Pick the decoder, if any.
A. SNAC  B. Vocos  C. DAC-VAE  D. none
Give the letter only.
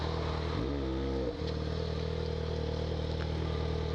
D